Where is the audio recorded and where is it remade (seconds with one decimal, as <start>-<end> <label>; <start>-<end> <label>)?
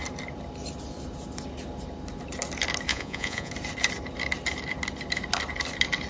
0.0-2.9 recorded; 2.9-3.5 remade; 3.5-6.1 recorded